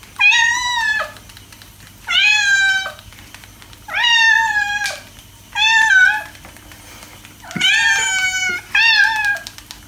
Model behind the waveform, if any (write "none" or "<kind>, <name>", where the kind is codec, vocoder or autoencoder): none